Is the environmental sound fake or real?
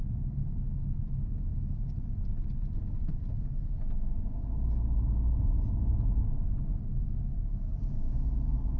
real